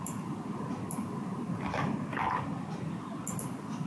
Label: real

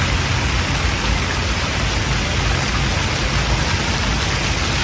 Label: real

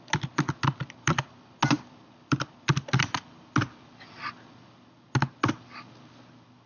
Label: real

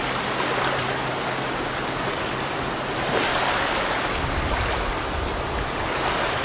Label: real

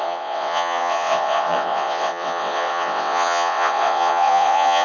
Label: fake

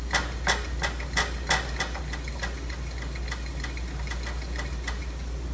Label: real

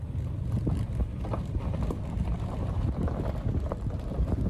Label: fake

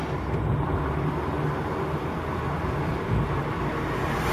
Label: real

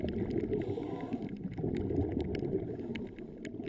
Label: real